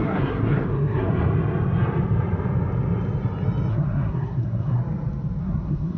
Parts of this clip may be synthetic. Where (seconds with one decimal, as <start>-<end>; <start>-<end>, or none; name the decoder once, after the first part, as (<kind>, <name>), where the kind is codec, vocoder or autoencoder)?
0.0-1.1 (codec, SNAC); 3.7-4.8; 5.4-6.0